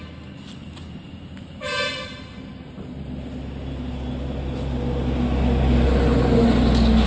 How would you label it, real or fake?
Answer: real